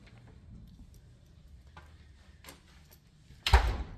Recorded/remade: recorded